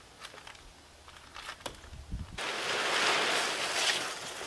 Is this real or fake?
real